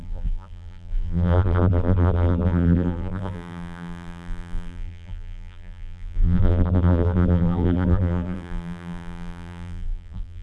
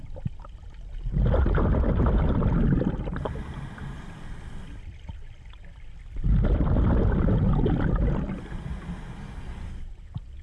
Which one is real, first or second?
second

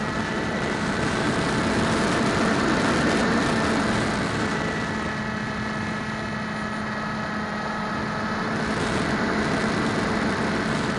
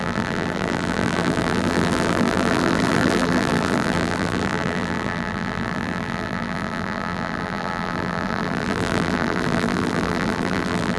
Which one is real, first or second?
first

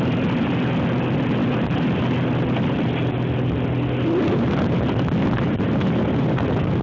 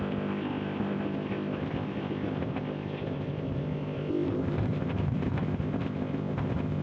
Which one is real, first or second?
first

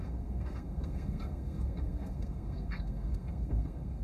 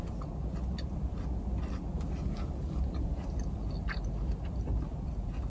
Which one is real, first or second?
second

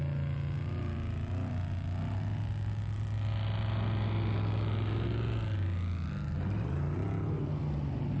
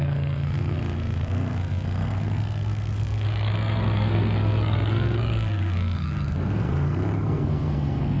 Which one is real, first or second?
first